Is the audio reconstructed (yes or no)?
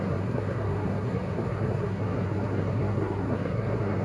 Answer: yes